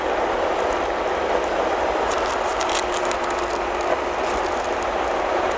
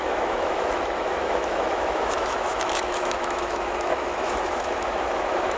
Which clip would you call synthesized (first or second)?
second